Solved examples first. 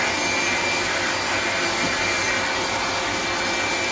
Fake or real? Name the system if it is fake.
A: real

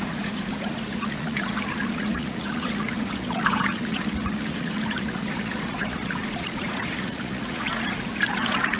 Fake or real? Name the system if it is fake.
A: fake, vocoder, Vocos